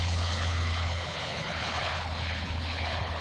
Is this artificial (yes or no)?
yes